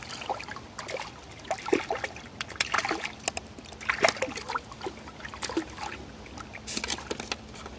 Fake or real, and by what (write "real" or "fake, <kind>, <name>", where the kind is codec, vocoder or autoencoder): real